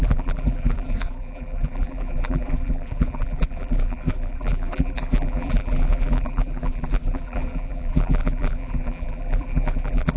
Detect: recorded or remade remade